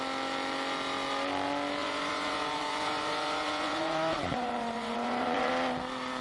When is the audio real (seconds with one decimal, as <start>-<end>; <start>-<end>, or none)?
0.0-1.8; 5.5-6.2